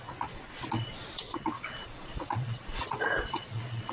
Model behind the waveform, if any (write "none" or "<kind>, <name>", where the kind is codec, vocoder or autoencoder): vocoder, Vocos